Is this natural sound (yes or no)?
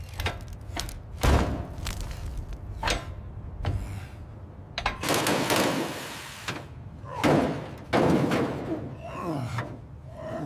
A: yes